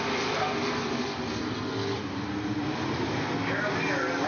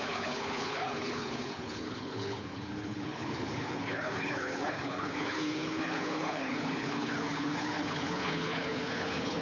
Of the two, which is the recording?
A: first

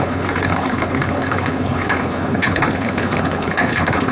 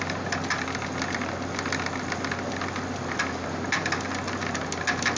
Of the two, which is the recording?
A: second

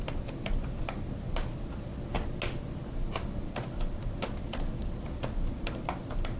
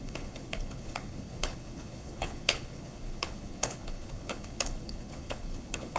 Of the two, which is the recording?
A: first